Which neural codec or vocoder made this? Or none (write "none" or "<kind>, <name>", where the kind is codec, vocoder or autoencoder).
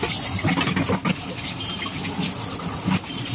none